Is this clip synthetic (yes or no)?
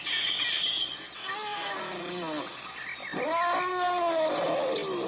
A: no